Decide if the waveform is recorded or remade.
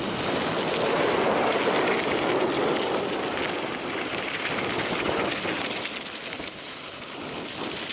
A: recorded